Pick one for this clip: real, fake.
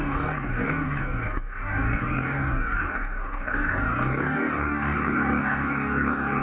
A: fake